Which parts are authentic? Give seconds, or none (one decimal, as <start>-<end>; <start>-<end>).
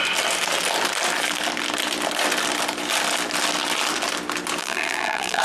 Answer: 0.0-4.6